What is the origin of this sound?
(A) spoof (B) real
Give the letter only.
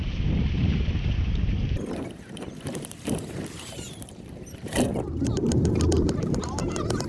A